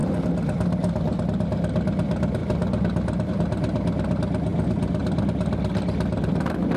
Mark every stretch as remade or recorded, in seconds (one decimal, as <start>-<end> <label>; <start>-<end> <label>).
0.0-6.8 recorded

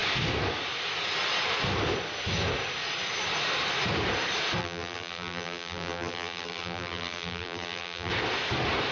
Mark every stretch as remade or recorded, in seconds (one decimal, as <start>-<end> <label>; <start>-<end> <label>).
0.0-4.6 recorded; 4.6-8.1 remade; 8.1-8.9 recorded

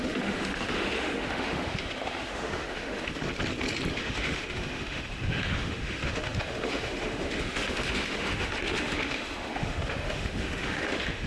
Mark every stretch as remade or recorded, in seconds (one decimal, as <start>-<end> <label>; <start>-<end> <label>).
0.0-3.2 remade; 3.2-3.9 recorded; 3.9-11.3 remade

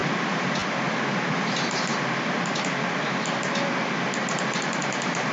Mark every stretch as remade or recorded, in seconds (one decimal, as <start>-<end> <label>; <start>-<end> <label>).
0.0-4.2 recorded; 4.2-5.3 remade

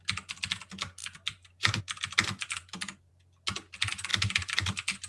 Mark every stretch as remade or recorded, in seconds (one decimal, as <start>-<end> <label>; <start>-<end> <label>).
0.0-1.0 recorded; 1.0-1.8 remade; 1.8-2.6 recorded; 2.6-3.1 remade; 3.1-4.1 recorded; 4.1-5.1 remade

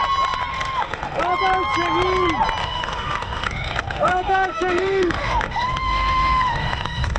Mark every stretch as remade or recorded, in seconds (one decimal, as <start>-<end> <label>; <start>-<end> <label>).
0.0-0.5 recorded; 0.5-1.2 remade; 1.2-2.6 recorded; 2.6-7.2 remade

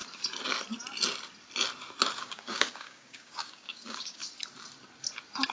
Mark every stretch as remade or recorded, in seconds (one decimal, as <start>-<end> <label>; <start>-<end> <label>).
0.0-2.2 recorded; 2.2-4.2 remade; 4.2-5.5 recorded